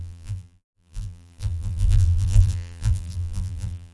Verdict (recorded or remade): remade